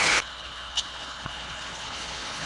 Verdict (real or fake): fake